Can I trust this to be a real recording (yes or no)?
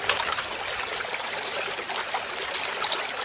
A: yes